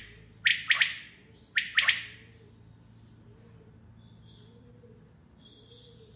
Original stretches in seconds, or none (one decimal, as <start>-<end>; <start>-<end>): 0.0-6.2